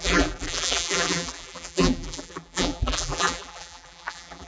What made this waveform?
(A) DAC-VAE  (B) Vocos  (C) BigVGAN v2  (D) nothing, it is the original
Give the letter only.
C